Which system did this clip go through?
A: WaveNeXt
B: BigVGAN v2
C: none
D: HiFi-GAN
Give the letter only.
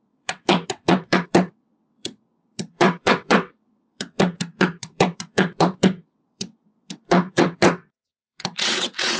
A